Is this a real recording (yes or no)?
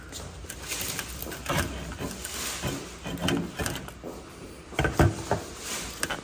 yes